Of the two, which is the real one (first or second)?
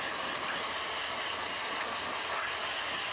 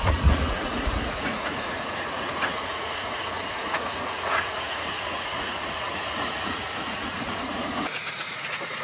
first